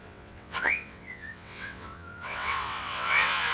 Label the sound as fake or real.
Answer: fake